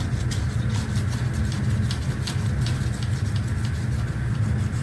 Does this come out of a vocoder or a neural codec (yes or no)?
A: no